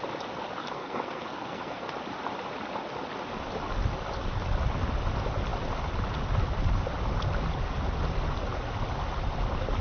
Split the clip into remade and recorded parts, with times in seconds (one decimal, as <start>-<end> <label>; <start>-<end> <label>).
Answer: 0.0-0.6 recorded; 0.6-1.9 remade; 1.9-9.8 recorded